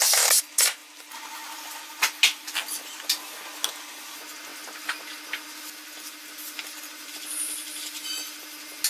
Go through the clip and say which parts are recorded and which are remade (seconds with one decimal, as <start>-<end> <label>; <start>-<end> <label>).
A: 0.0-8.9 recorded